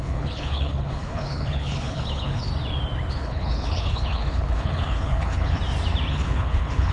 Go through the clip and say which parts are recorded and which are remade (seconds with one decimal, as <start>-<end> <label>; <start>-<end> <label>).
0.0-2.5 remade; 2.5-3.1 recorded; 3.1-5.6 remade; 5.6-6.1 recorded; 6.1-6.9 remade